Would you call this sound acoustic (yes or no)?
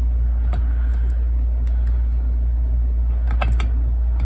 yes